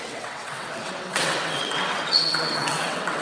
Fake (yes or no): yes